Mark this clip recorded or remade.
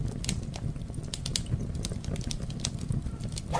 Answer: recorded